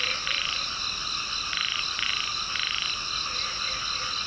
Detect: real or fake real